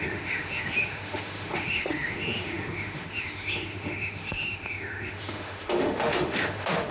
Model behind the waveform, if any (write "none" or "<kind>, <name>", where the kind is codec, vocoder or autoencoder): autoencoder, DAC-VAE